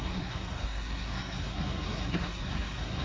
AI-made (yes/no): yes